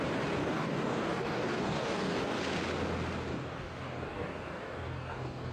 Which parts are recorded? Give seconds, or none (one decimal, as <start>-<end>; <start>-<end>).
0.0-0.4; 2.4-3.3